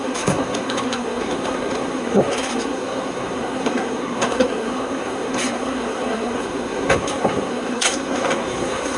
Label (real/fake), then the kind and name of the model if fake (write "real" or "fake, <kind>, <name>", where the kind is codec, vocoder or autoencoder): fake, codec, SNAC